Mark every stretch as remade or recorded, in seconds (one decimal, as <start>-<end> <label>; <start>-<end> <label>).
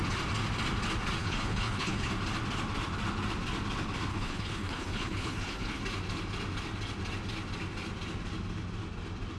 0.0-1.2 recorded; 1.2-2.1 remade; 2.1-4.1 recorded; 4.1-5.8 remade; 5.8-9.4 recorded